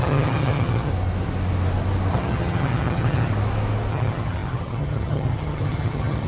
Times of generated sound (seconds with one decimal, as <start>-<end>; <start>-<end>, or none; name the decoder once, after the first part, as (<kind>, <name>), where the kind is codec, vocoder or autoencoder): 0.0-0.9 (vocoder, HiFi-GAN); 2.1-3.3; 3.9-6.3